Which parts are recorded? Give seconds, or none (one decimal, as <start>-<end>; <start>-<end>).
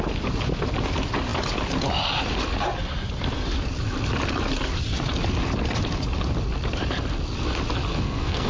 0.0-7.9